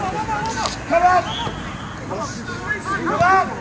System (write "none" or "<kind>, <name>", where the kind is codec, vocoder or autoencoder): none